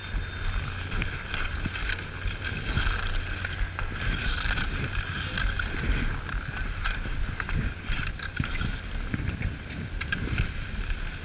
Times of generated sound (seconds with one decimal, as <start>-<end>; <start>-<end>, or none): none

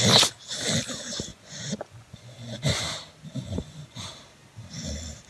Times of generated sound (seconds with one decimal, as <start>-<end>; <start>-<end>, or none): 1.3-2.8; 3.3-4.1

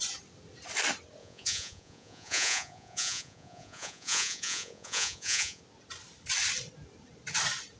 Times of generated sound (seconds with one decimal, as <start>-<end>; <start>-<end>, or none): 1.2-5.6